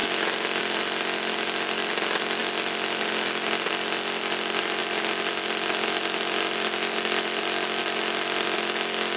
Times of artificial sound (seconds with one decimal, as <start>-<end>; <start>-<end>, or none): none